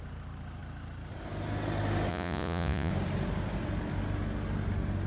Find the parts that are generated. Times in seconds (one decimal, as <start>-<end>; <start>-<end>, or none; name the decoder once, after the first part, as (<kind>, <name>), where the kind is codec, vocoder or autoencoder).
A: 2.1-2.9 (vocoder, Vocos)